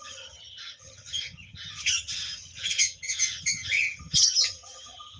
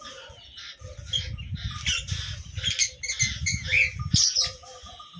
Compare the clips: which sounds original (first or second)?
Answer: second